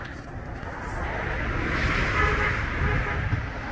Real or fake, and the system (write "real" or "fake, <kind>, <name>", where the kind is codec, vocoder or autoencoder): real